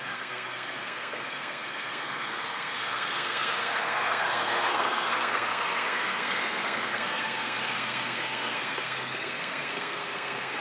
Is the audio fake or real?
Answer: fake